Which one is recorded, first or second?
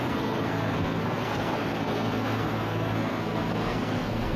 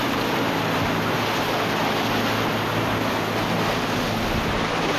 second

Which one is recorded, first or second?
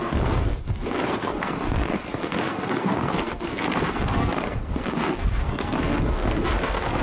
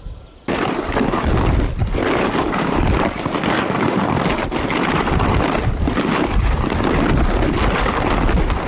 second